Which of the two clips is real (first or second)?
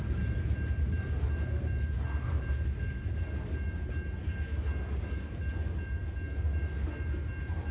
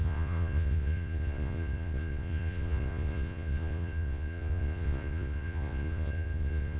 first